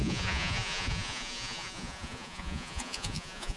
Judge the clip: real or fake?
fake